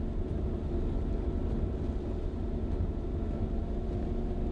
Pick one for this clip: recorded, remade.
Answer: recorded